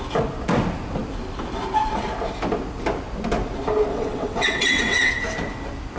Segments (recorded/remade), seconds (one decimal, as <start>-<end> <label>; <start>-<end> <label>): 0.0-3.9 recorded; 3.9-5.1 remade; 5.1-6.0 recorded